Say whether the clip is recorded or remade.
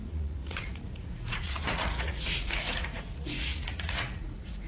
remade